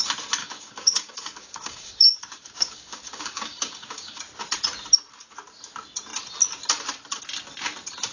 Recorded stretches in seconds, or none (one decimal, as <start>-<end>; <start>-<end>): 0.0-0.4; 4.2-8.1